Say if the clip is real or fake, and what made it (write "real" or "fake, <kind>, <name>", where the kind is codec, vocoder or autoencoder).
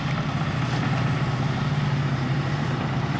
real